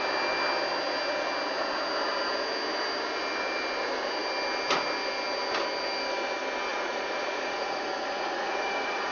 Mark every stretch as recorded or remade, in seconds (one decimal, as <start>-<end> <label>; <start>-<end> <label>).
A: 0.0-6.7 recorded; 6.7-9.1 remade